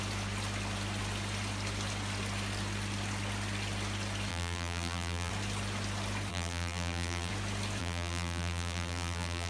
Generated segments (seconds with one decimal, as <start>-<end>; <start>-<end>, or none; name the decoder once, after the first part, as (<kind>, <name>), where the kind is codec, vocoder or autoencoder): 4.3-5.3 (vocoder, BigVGAN v2); 6.3-7.3; 7.8-9.5